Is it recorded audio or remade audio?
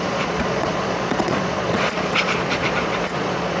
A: remade